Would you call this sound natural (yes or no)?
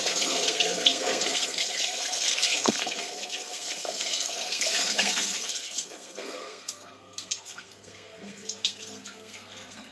no